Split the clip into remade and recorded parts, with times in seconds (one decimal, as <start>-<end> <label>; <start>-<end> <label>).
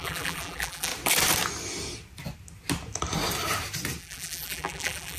0.0-0.9 remade; 0.9-4.0 recorded; 4.0-5.2 remade